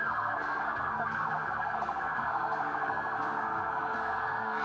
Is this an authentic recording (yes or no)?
no